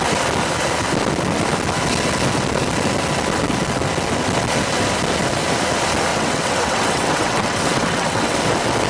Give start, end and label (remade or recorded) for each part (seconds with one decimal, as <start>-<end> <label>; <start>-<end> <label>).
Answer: 0.0-6.1 recorded; 6.1-8.4 remade; 8.4-8.9 recorded